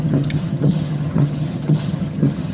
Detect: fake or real fake